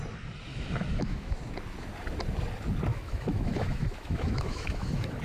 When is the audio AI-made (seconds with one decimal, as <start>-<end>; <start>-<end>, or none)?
0.5-1.4; 2.9-5.2